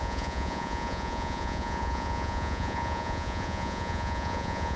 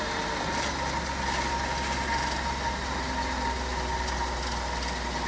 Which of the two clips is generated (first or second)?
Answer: first